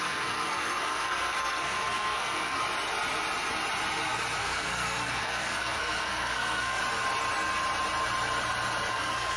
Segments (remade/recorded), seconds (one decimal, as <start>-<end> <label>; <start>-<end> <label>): 0.0-2.6 remade; 2.6-4.4 recorded; 4.4-6.8 remade; 6.8-8.9 recorded; 8.9-9.4 remade